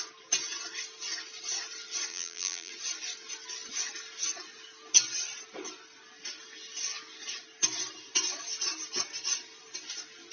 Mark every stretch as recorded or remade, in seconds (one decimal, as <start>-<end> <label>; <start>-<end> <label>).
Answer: 0.0-2.1 recorded; 2.1-2.7 remade; 2.7-10.3 recorded